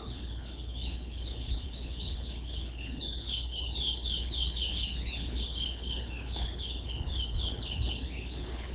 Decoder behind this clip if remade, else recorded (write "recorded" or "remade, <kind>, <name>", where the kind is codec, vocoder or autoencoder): remade, codec, HILCodec